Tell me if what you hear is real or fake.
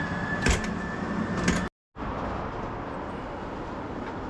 real